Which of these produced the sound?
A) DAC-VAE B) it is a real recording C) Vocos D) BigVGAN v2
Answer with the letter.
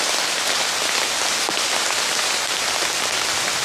B